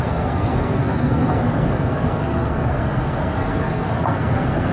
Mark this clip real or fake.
fake